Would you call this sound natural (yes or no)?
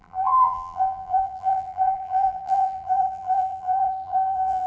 no